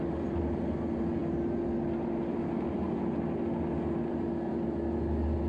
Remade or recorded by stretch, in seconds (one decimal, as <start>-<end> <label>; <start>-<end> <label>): 0.0-5.5 recorded

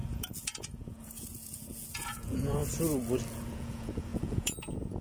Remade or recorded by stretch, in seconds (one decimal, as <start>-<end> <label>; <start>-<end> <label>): 0.0-2.6 remade; 2.6-3.3 recorded; 3.3-5.0 remade

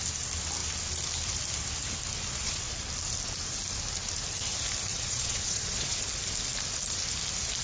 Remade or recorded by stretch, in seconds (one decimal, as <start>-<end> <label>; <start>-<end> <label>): 0.0-2.3 recorded; 2.3-2.9 remade; 2.9-4.9 recorded; 4.9-6.0 remade; 6.0-7.6 recorded

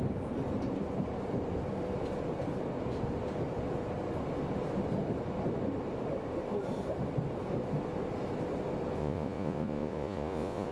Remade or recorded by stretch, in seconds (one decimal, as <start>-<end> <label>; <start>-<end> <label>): 0.0-9.0 recorded; 9.0-10.7 remade

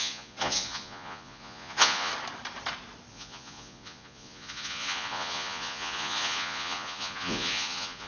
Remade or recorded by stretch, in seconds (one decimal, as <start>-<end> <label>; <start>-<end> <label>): 0.0-2.1 remade; 2.1-3.1 recorded; 3.1-8.1 remade